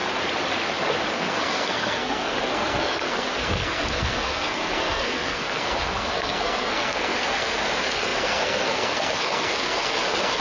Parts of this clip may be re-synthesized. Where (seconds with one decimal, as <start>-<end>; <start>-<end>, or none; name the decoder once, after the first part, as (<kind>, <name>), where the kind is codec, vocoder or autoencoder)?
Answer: 1.1-10.4 (codec, SNAC)